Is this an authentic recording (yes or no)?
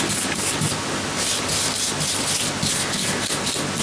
yes